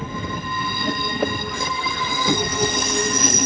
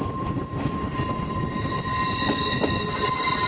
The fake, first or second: first